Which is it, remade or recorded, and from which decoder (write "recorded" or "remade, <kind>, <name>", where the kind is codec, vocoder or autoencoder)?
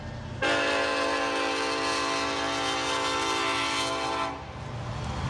recorded